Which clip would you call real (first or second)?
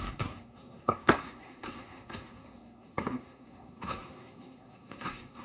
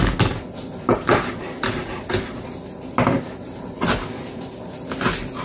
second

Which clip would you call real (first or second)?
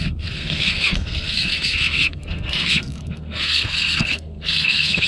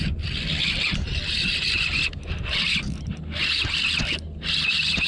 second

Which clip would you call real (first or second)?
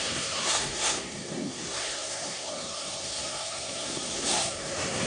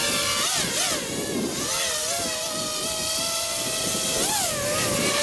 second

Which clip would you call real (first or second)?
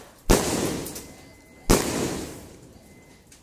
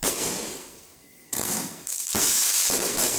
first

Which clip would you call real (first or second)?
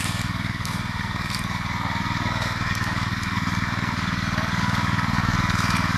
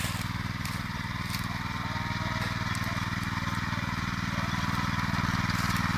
second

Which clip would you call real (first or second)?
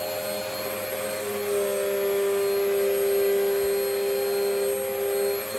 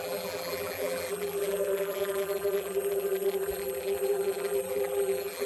first